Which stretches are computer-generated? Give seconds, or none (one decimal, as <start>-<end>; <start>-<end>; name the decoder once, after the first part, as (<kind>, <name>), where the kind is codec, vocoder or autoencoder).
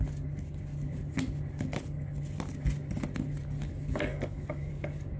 4.1-4.7 (codec, DAC)